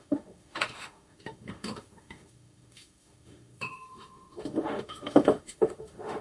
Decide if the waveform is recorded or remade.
remade